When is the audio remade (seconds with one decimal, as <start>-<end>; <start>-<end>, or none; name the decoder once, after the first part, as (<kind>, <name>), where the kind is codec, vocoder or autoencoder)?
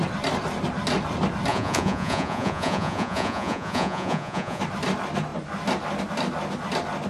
1.5-4.6 (vocoder, Vocos)